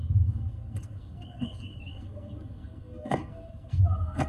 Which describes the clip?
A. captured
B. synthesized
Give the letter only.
B